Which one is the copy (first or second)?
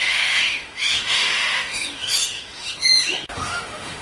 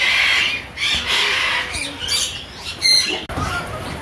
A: first